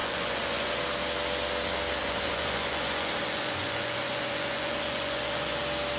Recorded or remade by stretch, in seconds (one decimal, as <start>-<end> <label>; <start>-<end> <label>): 0.0-0.8 remade; 0.8-2.0 recorded; 2.0-5.6 remade; 5.6-6.0 recorded